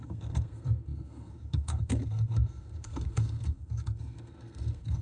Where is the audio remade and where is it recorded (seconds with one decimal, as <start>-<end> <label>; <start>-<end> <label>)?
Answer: 0.0-5.0 remade